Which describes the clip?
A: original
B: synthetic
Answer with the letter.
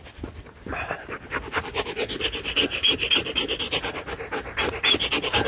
A